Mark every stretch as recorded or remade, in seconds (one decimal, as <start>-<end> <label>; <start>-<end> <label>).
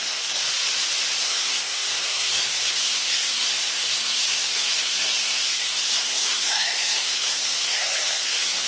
0.0-0.5 remade; 0.5-1.2 recorded; 1.2-8.7 remade